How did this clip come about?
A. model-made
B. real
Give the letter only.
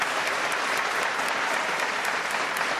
B